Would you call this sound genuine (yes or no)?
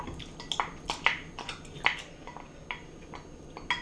yes